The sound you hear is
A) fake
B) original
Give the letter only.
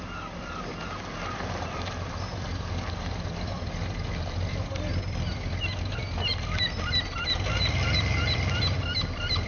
A